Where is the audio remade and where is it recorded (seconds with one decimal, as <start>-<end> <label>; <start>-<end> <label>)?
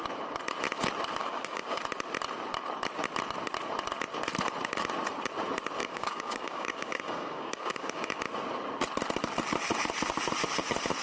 0.0-1.2 recorded; 1.2-1.8 remade; 1.8-5.8 recorded; 5.8-8.2 remade; 8.2-11.0 recorded